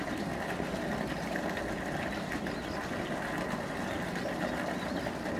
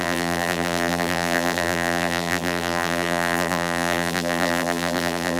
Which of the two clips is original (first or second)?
first